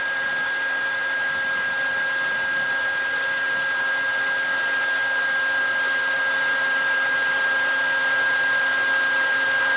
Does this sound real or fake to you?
real